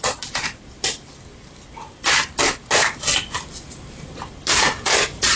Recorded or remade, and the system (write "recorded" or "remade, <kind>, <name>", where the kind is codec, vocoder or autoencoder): recorded